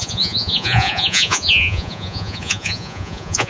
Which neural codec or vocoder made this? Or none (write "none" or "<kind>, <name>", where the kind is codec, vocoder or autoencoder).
vocoder, Vocos